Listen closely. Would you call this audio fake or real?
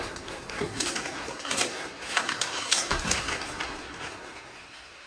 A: fake